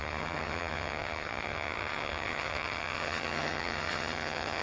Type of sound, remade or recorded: remade